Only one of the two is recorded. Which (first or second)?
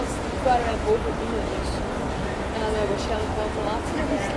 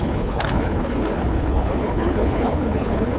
first